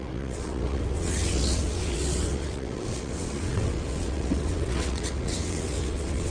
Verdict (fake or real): fake